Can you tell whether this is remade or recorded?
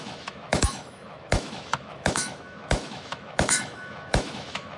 remade